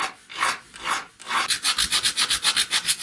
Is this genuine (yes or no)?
yes